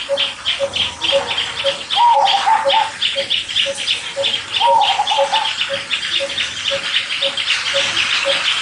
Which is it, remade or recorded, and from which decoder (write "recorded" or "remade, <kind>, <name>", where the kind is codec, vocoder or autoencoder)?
recorded